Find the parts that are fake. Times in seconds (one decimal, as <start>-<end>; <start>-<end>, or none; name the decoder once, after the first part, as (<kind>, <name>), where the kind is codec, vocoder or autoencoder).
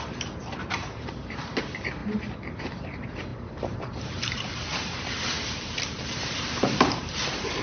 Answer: 0.0-7.6 (vocoder, BigVGAN v2)